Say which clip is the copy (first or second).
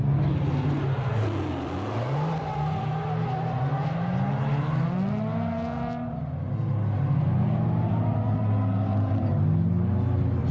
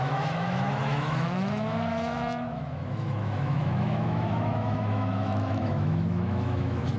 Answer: second